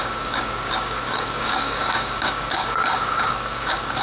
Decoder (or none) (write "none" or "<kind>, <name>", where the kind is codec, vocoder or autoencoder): codec, DAC